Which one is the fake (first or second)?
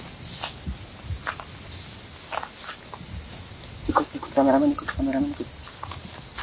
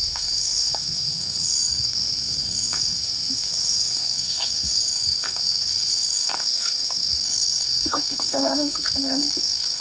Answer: second